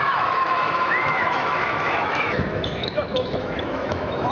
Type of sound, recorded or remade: remade